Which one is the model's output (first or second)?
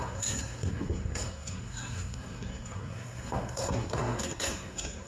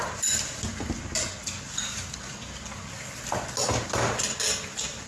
first